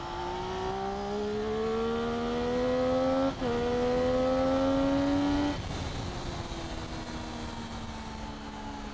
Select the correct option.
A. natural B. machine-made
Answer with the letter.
A